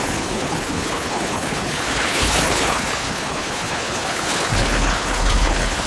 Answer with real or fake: fake